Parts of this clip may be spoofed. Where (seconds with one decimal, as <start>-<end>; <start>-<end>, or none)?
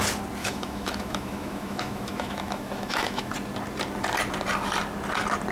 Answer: 0.4-3.3